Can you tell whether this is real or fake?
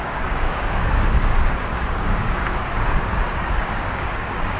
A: fake